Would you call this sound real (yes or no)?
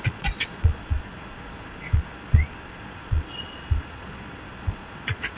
no